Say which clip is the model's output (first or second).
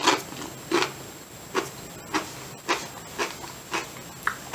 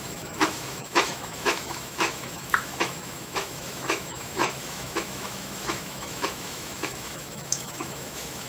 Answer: second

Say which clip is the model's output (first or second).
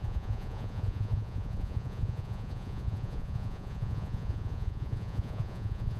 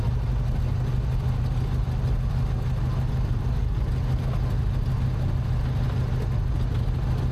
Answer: first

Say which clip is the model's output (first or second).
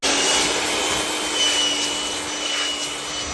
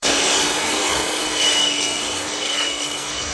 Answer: second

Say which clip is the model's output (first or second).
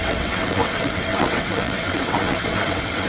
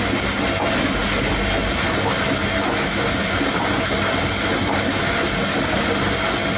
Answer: first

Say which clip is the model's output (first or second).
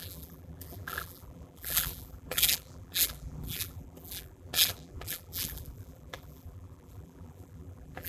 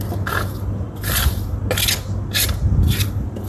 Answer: first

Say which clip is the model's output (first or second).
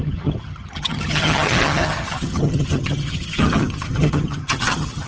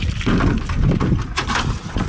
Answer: first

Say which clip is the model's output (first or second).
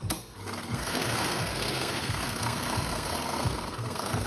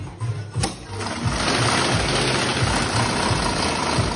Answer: first